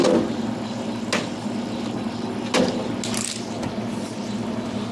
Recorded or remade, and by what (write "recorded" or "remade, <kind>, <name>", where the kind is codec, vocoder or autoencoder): recorded